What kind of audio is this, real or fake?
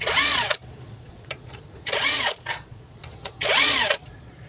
fake